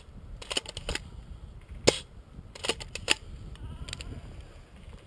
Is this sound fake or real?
real